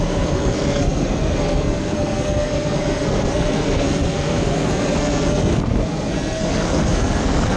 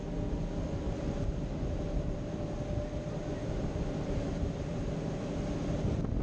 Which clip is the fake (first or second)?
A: first